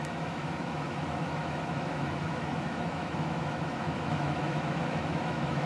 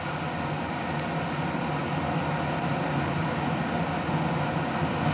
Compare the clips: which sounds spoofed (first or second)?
first